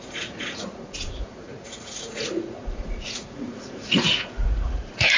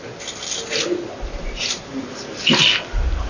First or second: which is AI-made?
first